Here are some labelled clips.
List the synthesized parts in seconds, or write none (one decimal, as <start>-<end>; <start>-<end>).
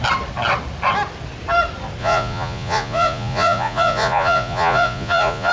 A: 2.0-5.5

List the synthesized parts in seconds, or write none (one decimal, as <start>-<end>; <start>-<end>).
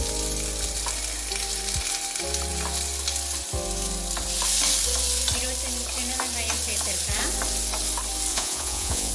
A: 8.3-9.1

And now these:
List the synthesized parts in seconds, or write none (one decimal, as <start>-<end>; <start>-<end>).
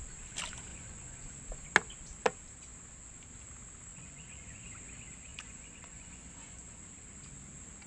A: 0.7-1.3; 3.9-4.6; 5.3-6.8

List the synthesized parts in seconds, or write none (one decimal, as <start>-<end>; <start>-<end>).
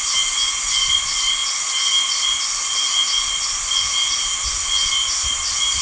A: none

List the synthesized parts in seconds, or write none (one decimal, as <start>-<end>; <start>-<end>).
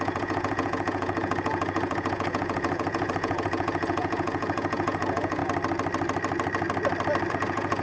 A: 0.0-5.4; 7.3-7.8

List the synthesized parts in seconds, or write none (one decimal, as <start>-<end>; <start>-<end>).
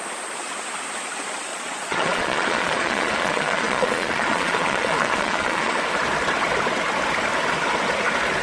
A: 1.5-5.8